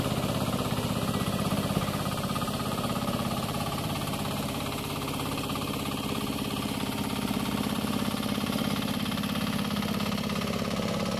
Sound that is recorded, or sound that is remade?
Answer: remade